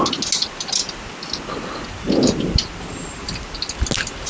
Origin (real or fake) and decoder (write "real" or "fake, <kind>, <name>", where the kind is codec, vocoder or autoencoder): real